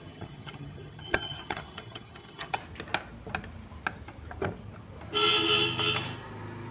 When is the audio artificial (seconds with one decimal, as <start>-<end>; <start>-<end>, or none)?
0.0-2.6